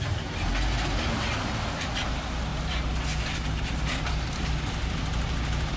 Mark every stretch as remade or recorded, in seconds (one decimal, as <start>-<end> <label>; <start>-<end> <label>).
0.0-5.8 recorded